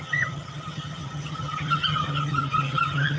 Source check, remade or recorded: remade